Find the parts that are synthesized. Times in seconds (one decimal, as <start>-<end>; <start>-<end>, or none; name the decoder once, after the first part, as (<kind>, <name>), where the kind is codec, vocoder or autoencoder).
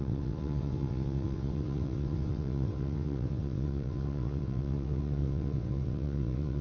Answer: 0.0-6.6 (vocoder, WaveNeXt)